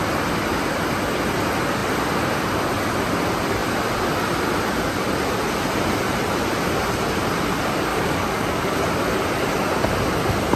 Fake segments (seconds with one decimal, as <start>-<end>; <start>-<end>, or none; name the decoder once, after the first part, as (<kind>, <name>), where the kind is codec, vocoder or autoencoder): 7.9-8.8 (codec, DAC)